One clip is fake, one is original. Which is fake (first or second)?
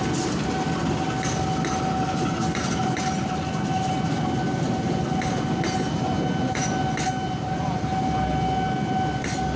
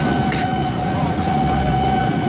second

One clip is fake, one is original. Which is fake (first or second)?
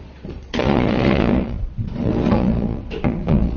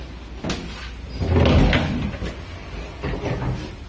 first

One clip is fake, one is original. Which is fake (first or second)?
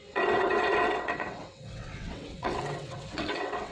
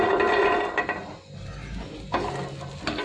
first